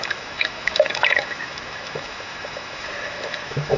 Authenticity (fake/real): fake